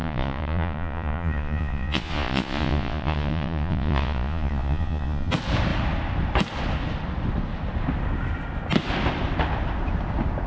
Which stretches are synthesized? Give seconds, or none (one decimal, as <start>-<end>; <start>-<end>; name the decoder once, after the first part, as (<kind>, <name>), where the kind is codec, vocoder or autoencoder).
0.0-5.3 (vocoder, Vocos)